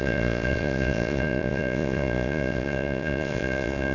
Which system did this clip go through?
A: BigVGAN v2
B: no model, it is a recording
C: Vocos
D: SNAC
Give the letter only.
C